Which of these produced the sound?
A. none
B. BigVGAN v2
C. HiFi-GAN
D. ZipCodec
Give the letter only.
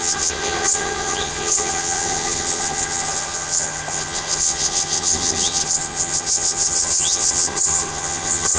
C